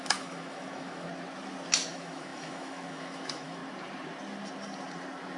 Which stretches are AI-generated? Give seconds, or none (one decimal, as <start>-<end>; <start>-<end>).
0.0-1.1; 1.9-3.6